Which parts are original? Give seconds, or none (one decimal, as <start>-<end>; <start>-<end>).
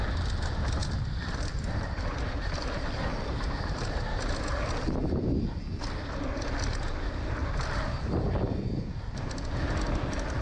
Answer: 0.0-0.8; 4.3-7.4; 8.8-10.4